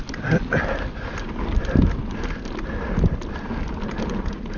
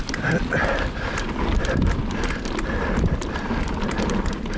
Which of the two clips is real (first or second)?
first